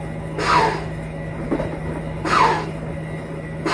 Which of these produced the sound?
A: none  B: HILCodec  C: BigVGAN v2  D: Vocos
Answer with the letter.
A